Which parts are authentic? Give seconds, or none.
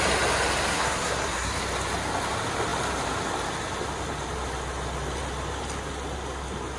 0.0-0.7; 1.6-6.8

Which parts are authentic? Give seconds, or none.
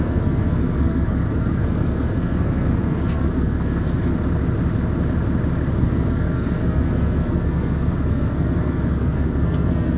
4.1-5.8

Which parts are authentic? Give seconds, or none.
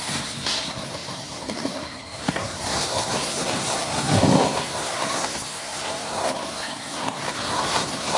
none